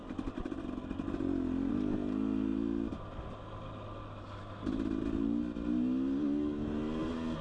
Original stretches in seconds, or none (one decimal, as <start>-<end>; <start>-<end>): 0.0-7.4